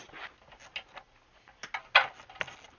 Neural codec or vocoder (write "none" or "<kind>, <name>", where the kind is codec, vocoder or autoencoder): none